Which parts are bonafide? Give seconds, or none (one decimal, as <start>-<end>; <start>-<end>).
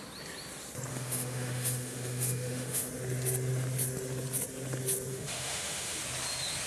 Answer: 0.0-0.9; 2.9-5.1; 6.0-6.7